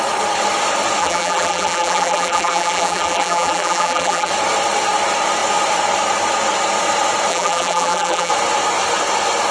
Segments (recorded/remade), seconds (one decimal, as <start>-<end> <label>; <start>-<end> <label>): 0.0-1.0 recorded; 1.0-4.3 remade; 4.3-7.3 recorded; 7.3-8.3 remade; 8.3-9.5 recorded